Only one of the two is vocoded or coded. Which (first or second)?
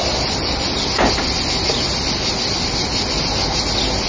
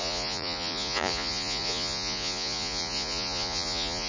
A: second